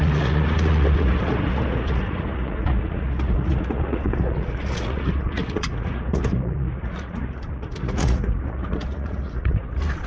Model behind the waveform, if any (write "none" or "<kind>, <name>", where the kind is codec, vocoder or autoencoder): vocoder, Vocos